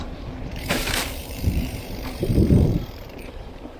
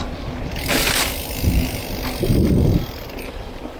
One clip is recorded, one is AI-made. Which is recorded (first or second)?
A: second